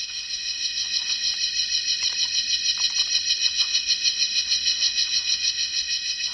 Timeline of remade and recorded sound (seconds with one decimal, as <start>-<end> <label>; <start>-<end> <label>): 0.0-1.3 remade; 1.3-3.4 recorded; 3.4-6.3 remade